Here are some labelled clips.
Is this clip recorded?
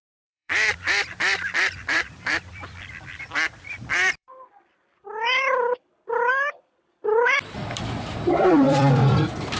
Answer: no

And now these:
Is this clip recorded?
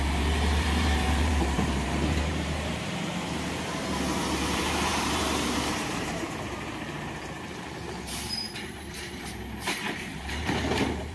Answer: no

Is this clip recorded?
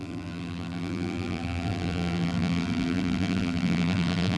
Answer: no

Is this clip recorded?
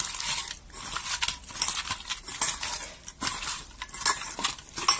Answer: yes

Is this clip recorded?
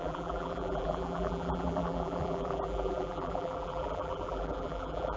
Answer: no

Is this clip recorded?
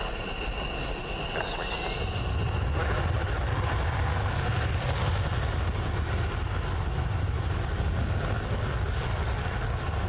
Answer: yes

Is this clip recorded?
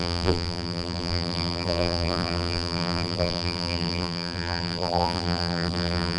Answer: no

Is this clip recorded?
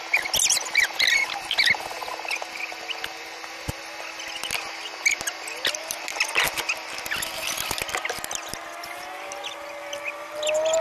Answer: yes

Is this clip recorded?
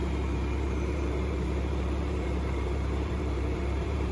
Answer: no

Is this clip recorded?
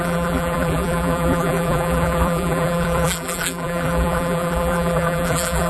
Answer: no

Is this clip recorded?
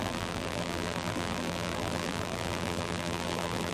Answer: no